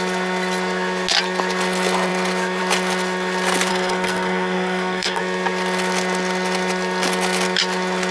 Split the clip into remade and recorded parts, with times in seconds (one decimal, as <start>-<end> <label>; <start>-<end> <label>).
0.0-3.7 recorded; 3.7-5.2 remade; 5.2-8.1 recorded